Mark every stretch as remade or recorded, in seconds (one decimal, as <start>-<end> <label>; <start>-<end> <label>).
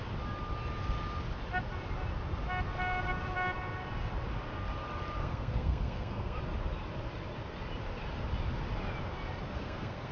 0.0-5.2 recorded; 5.2-6.4 remade; 6.4-9.4 recorded; 9.4-10.1 remade